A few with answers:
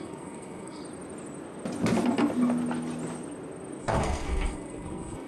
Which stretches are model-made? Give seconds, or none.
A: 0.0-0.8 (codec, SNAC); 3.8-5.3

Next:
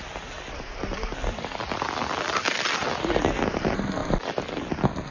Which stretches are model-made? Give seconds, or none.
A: none

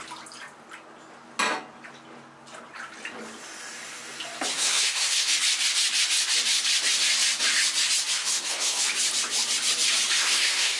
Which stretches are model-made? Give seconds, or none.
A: 4.5-5.3 (codec, SNAC); 8.2-8.8; 10.2-10.8

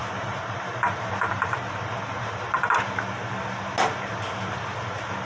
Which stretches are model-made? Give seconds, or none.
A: 0.0-1.6 (vocoder, BigVGAN v2)

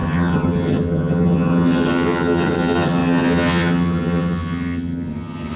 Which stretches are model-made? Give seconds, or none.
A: 0.0-5.6 (vocoder, HiFi-GAN)